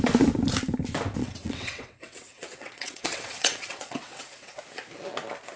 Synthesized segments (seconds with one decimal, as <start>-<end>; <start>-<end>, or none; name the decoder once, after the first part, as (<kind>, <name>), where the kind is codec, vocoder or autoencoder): 1.2-4.6 (vocoder, WaveNeXt)